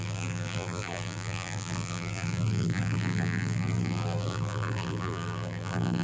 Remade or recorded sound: remade